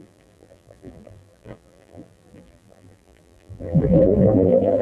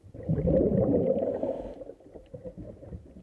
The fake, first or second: first